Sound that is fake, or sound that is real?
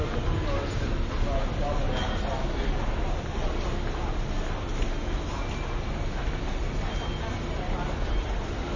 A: real